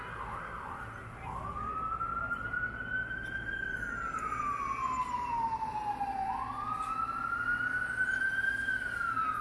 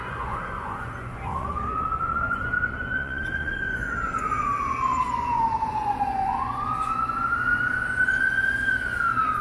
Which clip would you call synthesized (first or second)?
second